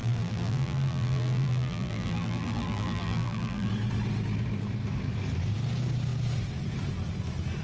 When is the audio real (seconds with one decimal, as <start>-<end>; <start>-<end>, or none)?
3.7-7.6